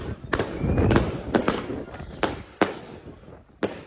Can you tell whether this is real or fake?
real